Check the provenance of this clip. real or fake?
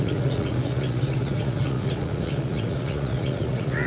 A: fake